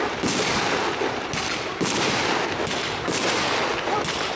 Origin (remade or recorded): recorded